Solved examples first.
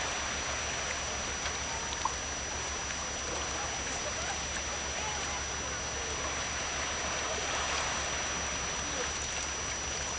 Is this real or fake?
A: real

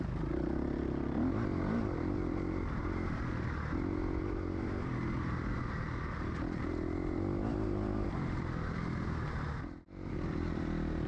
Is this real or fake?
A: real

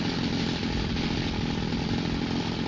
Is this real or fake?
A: real